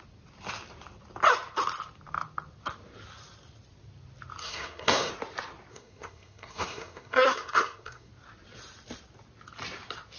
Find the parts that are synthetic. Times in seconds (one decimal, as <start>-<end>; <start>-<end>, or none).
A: 4.4-5.1; 5.7-8.1